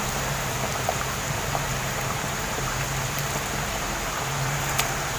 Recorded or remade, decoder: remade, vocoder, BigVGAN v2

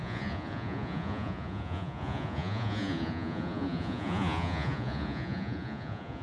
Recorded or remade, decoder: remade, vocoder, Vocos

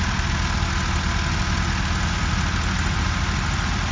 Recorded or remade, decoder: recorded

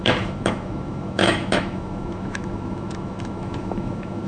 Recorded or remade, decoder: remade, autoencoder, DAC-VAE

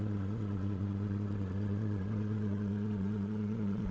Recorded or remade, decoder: remade, vocoder, Vocos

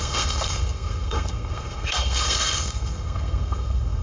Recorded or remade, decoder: remade, codec, SNAC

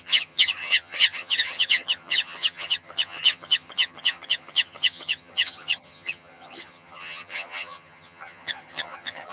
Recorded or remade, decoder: remade, vocoder, HiFi-GAN